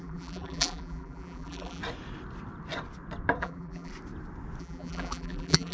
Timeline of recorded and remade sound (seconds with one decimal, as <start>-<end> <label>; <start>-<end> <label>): 0.0-1.8 remade; 1.8-3.4 recorded; 3.4-3.9 remade; 3.9-4.6 recorded; 4.6-5.7 remade